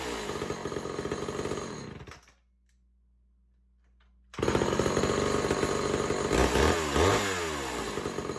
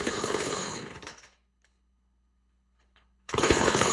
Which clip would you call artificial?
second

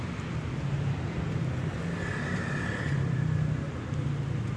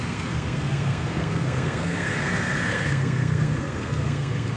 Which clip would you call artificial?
second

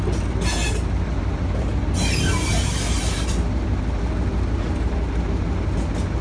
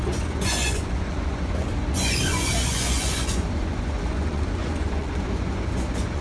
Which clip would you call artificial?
second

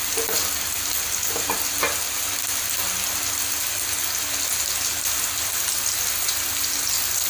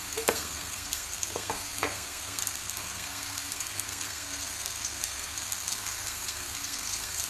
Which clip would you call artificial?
second